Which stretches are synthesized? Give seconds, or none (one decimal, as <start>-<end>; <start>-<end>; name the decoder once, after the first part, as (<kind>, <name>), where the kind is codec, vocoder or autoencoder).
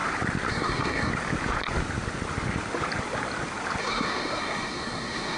0.5-1.1 (codec, SNAC); 3.8-5.4